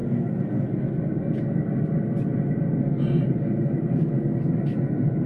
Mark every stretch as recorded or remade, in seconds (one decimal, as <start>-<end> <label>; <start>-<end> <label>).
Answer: 0.0-5.3 recorded